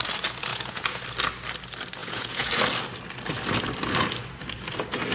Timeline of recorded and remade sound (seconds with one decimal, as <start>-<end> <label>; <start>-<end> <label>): 0.0-0.5 recorded; 0.5-1.0 remade; 1.0-2.0 recorded; 2.0-2.5 remade; 2.5-5.1 recorded